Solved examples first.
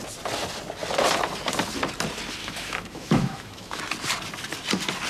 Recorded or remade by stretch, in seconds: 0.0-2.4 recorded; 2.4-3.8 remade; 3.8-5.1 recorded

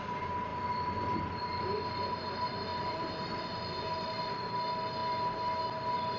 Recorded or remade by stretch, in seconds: 0.0-0.5 recorded; 0.5-1.4 remade; 1.4-2.7 recorded; 2.7-3.4 remade; 3.4-6.2 recorded

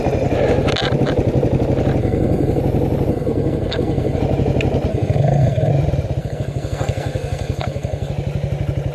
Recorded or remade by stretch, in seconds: 0.0-2.0 recorded; 2.0-2.6 remade; 2.6-3.1 recorded; 3.1-4.2 remade; 4.2-4.9 recorded; 4.9-5.7 remade; 5.7-6.2 recorded; 6.2-8.1 remade; 8.1-8.9 recorded

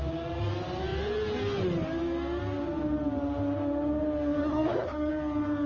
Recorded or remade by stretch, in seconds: 0.0-4.4 recorded; 4.4-5.1 remade; 5.1-5.7 recorded

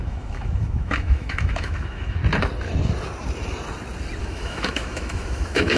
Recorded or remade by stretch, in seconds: 0.0-2.2 remade; 2.2-4.2 recorded; 4.2-5.8 remade